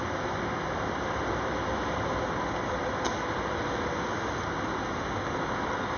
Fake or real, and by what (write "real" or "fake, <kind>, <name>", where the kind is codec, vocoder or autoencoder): real